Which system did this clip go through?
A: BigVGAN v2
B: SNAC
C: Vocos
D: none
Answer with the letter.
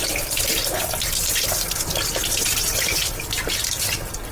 D